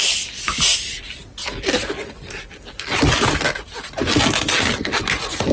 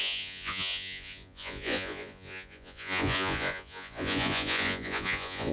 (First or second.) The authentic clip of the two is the first